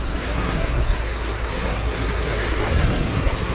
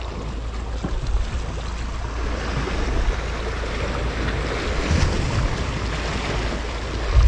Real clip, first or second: second